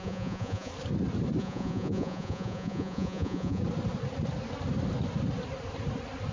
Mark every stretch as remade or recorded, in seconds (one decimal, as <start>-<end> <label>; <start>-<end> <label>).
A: 0.0-0.7 remade; 0.7-1.4 recorded; 1.4-3.6 remade; 3.6-6.3 recorded